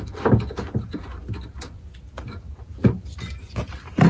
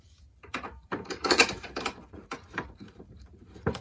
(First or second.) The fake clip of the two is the second